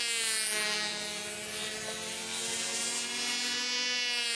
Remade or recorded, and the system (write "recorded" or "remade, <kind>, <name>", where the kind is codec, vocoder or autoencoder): recorded